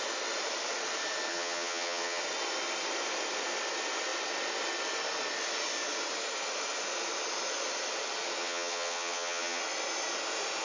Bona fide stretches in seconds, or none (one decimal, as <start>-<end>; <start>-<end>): 0.0-1.3; 2.2-8.4; 9.6-10.6